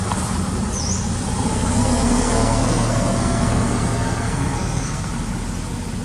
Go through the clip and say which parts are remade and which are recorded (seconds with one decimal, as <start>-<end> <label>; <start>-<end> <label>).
0.0-1.5 recorded; 1.5-5.1 remade; 5.1-6.0 recorded